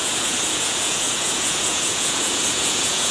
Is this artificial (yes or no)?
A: yes